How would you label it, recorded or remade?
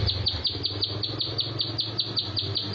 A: recorded